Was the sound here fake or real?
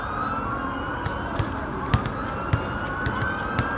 real